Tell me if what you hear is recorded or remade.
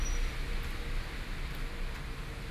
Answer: recorded